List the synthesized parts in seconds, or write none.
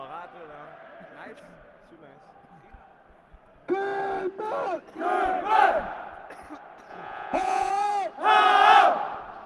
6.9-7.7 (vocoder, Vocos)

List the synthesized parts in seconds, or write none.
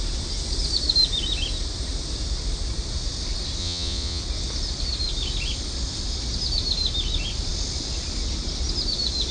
3.6-4.2 (vocoder, Vocos)